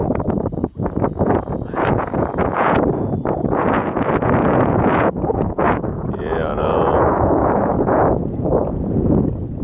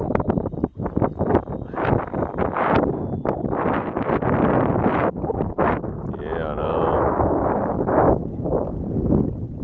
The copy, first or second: first